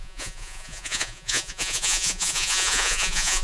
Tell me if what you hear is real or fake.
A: fake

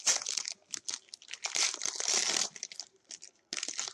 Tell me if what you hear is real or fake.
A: real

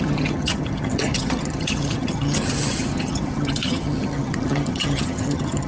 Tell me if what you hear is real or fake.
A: fake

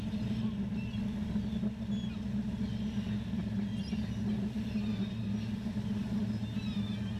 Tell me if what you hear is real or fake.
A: real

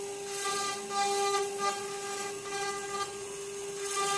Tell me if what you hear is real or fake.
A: real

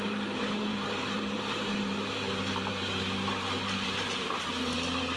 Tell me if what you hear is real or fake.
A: fake